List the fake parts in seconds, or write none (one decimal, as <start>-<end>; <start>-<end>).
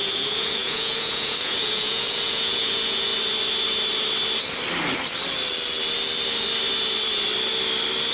0.0-3.1